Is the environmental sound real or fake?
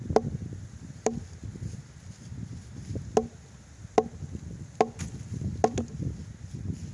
real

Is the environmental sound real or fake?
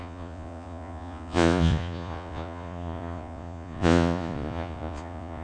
fake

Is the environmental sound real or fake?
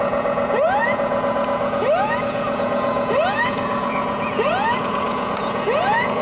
fake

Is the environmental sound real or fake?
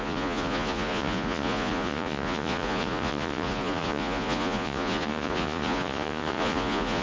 fake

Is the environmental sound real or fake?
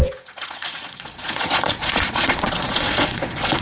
fake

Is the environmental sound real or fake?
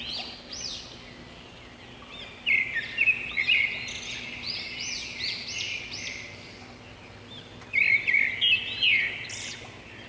real